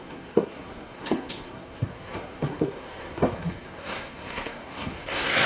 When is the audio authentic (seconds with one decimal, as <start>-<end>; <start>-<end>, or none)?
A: none